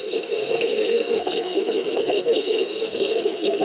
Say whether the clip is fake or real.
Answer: fake